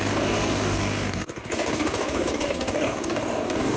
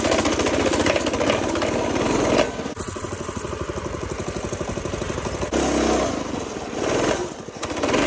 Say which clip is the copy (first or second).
first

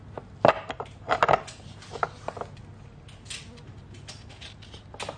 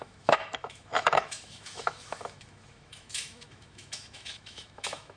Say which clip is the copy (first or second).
second